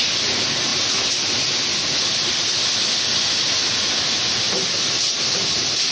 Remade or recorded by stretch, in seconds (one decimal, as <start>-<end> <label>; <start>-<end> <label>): 0.0-5.9 recorded